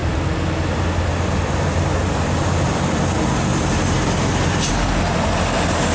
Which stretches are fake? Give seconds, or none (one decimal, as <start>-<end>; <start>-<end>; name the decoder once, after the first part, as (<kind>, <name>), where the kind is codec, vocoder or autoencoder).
none